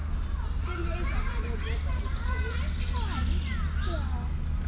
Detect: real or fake real